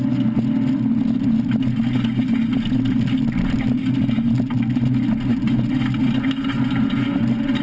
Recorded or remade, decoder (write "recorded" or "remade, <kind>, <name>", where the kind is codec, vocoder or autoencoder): recorded